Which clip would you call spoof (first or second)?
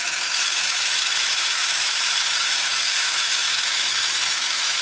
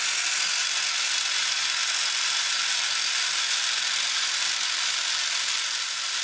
first